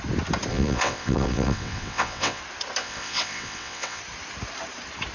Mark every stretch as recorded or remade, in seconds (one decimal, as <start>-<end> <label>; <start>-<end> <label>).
0.0-0.5 recorded; 0.5-2.4 remade; 2.4-2.8 recorded; 2.8-4.0 remade; 4.0-5.1 recorded